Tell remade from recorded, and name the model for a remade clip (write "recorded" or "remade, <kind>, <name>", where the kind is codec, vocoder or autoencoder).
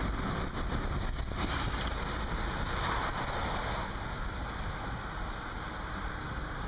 recorded